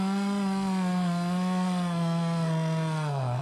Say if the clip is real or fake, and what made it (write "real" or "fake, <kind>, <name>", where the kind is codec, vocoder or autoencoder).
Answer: fake, codec, SNAC